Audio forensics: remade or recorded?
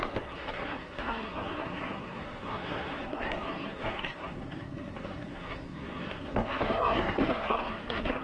remade